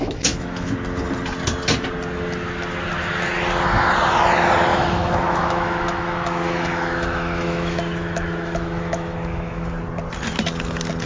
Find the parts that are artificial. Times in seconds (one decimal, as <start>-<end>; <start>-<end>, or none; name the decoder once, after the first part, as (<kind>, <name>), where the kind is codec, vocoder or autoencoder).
0.0-0.7 (autoencoder, DAC-VAE); 4.7-9.7